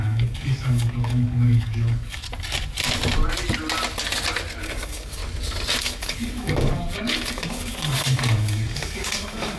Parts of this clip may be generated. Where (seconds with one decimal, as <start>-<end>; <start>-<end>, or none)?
0.0-2.2; 4.6-5.2; 5.8-9.6